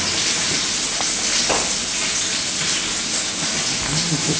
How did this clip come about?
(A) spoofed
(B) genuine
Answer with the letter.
B